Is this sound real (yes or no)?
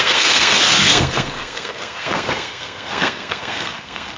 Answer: no